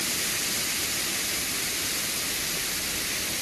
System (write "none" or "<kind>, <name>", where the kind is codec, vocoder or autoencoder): none